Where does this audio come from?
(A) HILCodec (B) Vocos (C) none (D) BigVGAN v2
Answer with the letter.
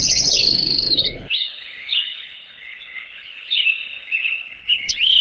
A